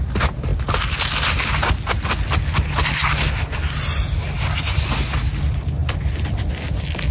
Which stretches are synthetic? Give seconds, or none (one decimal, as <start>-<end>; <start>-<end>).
none